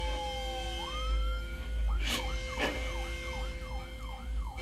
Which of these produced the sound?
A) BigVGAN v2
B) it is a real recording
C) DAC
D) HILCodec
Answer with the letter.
C